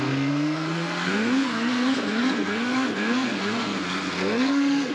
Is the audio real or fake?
fake